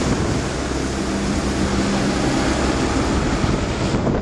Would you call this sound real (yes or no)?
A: yes